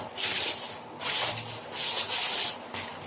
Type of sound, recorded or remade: recorded